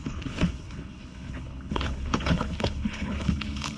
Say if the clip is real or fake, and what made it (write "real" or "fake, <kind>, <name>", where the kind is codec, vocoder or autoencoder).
fake, codec, HILCodec